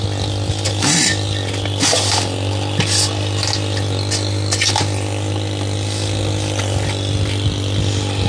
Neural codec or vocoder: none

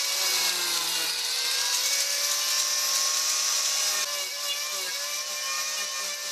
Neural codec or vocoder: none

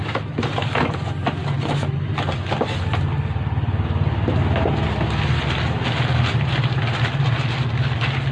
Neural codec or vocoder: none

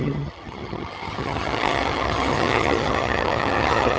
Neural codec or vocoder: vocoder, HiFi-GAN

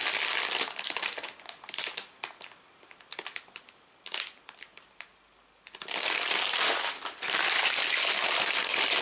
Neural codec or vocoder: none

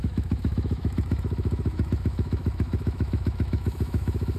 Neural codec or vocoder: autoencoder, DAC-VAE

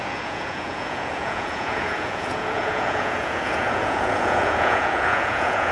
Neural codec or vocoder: vocoder, Vocos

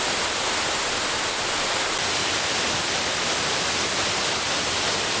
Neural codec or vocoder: none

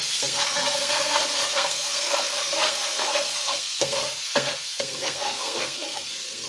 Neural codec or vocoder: codec, SNAC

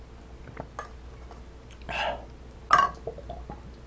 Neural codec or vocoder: none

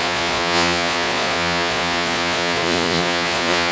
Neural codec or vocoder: vocoder, Vocos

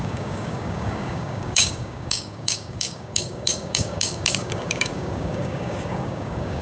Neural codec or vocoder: codec, DAC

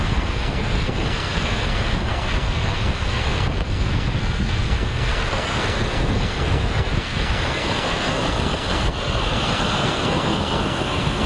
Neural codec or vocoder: codec, SNAC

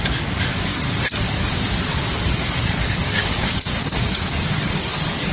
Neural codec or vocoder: codec, DAC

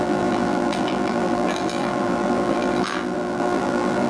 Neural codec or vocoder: vocoder, BigVGAN v2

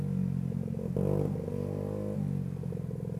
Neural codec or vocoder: none